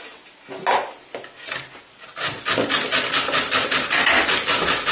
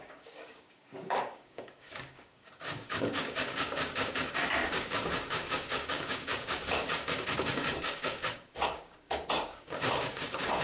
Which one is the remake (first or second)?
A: second